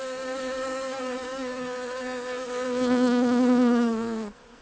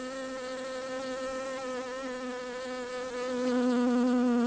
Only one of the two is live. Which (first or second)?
second